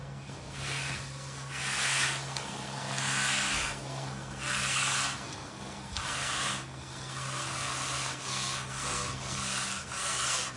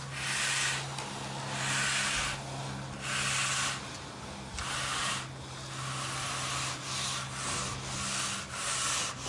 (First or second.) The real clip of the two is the second